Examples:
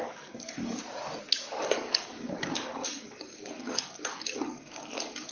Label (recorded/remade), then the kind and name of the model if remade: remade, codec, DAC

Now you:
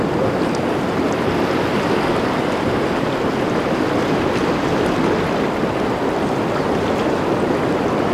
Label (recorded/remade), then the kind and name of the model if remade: recorded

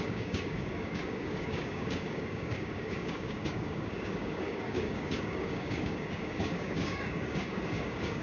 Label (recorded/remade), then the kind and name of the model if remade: remade, codec, DAC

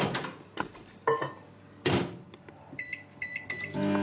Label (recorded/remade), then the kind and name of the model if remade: recorded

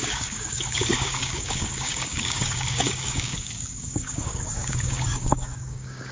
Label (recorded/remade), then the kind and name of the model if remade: remade, codec, DAC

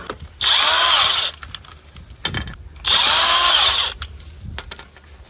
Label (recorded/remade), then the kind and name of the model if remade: recorded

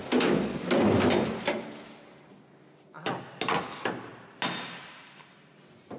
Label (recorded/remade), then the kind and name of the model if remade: recorded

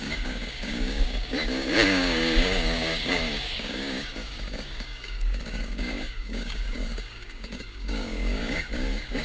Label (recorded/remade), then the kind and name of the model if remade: remade, codec, DAC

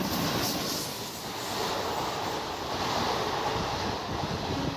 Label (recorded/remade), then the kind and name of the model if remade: recorded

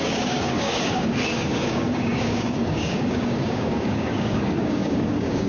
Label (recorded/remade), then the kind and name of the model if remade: remade, codec, DAC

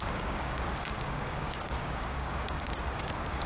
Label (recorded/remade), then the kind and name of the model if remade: remade, codec, DAC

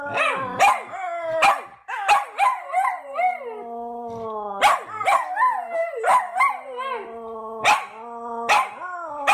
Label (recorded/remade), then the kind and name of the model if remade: recorded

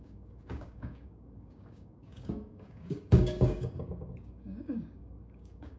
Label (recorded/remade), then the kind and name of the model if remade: remade, codec, DAC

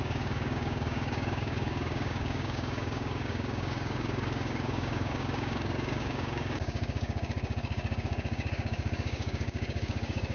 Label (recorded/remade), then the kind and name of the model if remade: remade, codec, DAC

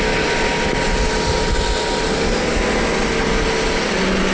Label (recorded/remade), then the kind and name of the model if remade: recorded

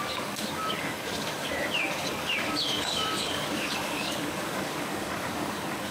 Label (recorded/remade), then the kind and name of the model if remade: remade, codec, DAC